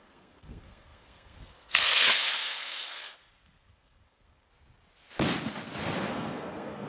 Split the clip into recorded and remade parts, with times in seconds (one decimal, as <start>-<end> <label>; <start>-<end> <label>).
0.0-4.5 remade; 4.5-6.1 recorded; 6.1-6.9 remade